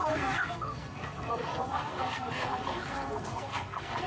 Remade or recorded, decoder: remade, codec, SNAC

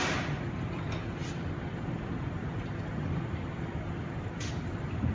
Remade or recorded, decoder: recorded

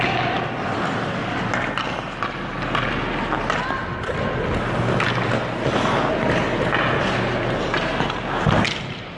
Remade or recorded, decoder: recorded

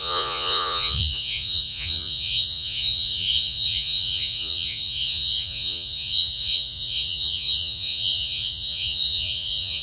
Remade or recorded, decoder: remade, vocoder, Vocos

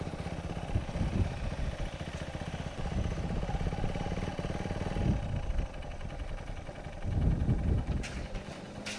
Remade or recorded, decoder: recorded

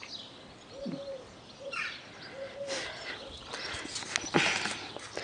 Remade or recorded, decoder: recorded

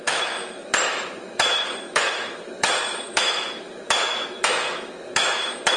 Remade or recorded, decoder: remade, autoencoder, DAC-VAE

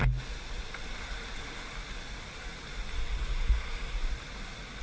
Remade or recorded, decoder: recorded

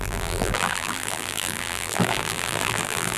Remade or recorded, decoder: remade, vocoder, BigVGAN v2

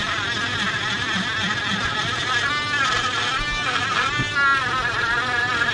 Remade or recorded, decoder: recorded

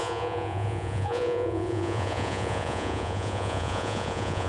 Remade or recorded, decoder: remade, vocoder, Vocos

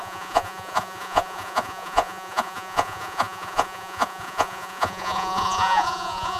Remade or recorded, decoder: remade, vocoder, Vocos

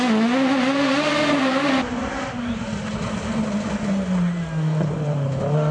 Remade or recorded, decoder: recorded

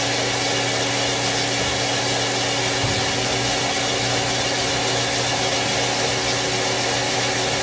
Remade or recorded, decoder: recorded